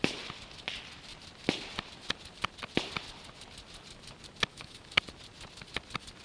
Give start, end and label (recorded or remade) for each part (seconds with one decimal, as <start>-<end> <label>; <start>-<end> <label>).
0.0-4.5 recorded; 4.5-5.0 remade; 5.0-6.2 recorded